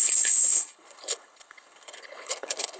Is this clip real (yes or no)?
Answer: no